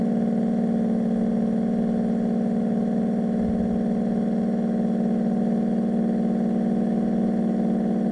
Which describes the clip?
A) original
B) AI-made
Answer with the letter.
A